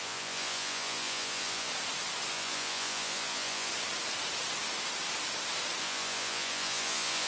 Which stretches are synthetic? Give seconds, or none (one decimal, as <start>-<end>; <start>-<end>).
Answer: 0.0-1.7; 2.3-3.7; 5.8-7.3